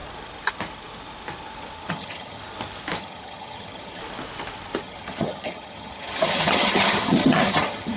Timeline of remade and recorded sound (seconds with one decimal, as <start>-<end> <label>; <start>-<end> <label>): 0.0-1.9 recorded; 1.9-2.4 remade; 2.4-3.0 recorded; 3.0-4.0 remade; 4.0-4.8 recorded; 4.8-8.0 remade